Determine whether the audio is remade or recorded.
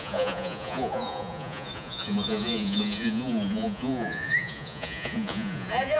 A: remade